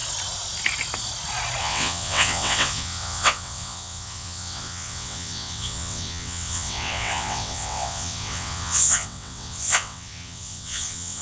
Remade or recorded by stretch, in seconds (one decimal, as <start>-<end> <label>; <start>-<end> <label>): 0.0-1.6 recorded; 1.6-11.2 remade